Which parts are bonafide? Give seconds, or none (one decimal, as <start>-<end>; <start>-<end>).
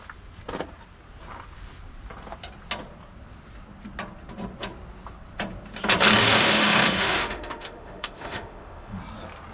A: 0.0-6.2; 9.0-9.5